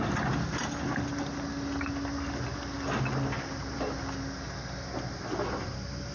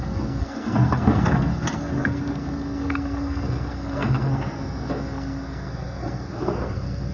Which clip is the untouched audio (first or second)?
first